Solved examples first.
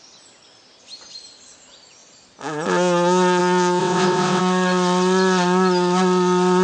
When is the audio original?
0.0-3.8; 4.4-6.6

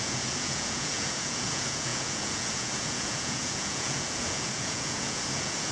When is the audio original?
none

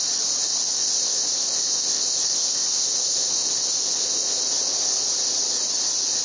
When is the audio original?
0.0-0.7; 4.4-6.2

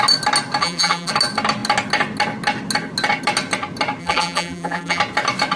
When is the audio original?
0.0-0.6; 1.1-4.0; 5.0-5.6

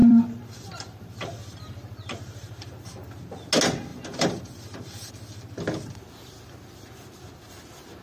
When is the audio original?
2.8-3.9; 5.1-8.0